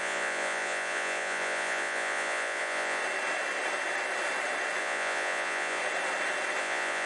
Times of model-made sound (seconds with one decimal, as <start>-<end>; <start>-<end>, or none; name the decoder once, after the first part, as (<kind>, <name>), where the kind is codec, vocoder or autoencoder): 0.0-3.0 (vocoder, Vocos); 4.8-5.8; 6.6-7.1